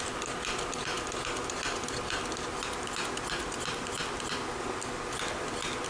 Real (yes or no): yes